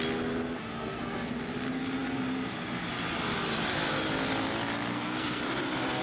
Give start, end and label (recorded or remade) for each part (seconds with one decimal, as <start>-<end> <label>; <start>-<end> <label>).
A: 0.0-0.8 recorded; 0.8-1.4 remade; 1.4-4.9 recorded; 4.9-5.4 remade; 5.4-6.0 recorded

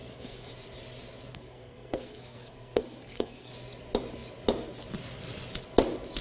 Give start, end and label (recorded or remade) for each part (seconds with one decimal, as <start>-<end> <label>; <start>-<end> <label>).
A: 0.0-0.5 remade; 0.5-1.3 recorded; 1.3-3.5 remade; 3.5-6.2 recorded

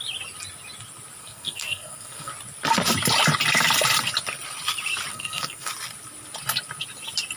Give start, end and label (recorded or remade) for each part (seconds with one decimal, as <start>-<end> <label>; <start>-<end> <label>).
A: 0.0-1.2 recorded; 1.2-2.3 remade; 2.3-5.1 recorded; 5.1-5.7 remade; 5.7-7.4 recorded

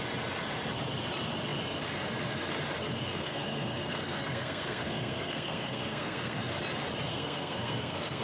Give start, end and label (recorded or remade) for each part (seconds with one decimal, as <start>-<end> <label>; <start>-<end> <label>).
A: 0.0-3.1 recorded; 3.1-6.4 remade; 6.4-7.1 recorded; 7.1-8.2 remade

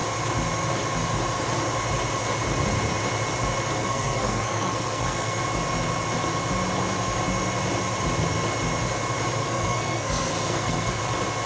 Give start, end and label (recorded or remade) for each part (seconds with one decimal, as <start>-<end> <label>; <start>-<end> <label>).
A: 0.0-3.8 recorded; 3.8-5.4 remade; 5.4-9.4 recorded; 9.4-11.0 remade; 11.0-11.5 recorded

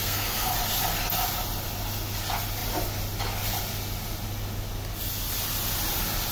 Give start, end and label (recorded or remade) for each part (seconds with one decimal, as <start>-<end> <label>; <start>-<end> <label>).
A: 0.0-0.5 remade; 0.5-6.3 recorded

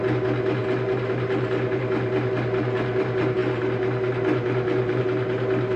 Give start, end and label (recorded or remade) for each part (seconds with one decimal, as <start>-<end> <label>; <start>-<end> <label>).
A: 0.0-5.8 recorded